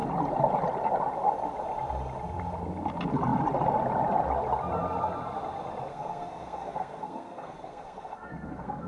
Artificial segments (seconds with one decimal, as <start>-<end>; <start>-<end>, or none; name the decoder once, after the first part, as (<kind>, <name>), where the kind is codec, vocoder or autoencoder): 5.9-8.9 (codec, SNAC)